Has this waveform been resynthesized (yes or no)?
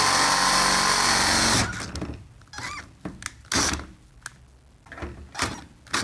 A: no